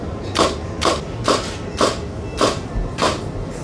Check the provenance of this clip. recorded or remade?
recorded